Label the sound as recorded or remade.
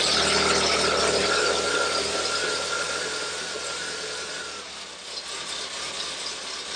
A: recorded